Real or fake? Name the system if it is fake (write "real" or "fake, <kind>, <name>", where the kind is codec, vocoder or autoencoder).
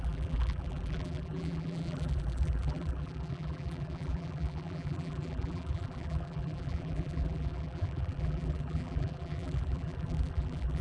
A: fake, vocoder, BigVGAN v2